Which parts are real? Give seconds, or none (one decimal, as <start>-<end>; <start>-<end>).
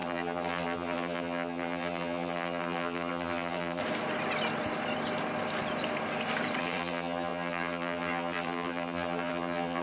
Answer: 3.8-6.6